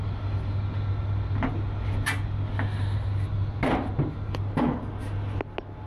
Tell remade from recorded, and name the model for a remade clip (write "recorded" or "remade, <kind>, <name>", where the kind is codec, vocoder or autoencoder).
recorded